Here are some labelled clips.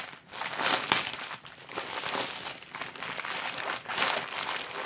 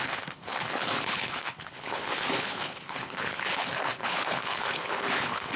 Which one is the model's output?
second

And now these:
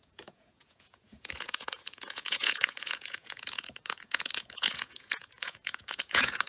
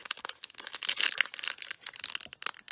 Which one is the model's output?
first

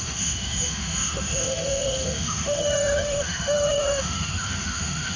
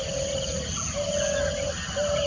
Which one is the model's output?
first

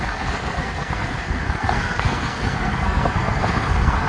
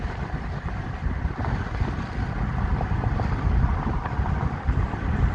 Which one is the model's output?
first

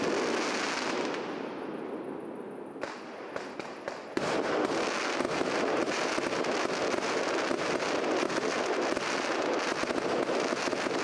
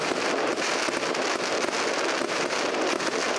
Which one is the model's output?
second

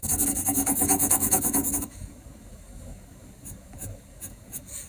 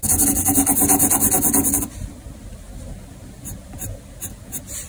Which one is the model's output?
first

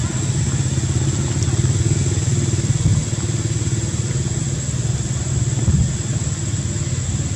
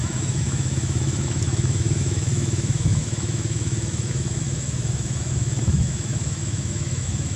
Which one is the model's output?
second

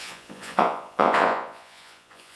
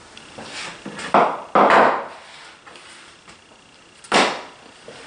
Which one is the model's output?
first